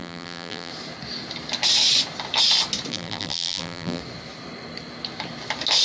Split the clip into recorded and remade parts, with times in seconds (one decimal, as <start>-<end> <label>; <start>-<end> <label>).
0.0-0.7 remade; 0.7-2.9 recorded; 2.9-4.0 remade; 4.0-5.8 recorded